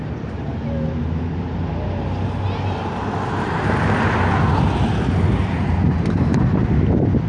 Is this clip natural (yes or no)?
yes